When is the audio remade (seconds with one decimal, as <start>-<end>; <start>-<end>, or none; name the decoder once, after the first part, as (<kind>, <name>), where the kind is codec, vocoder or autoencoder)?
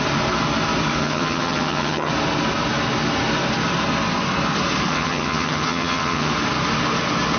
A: 1.0-2.1 (vocoder, HiFi-GAN); 4.9-6.3